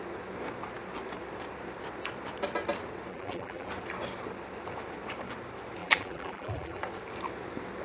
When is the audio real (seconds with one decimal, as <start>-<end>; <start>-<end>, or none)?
0.0-3.1; 3.7-5.8; 6.8-7.8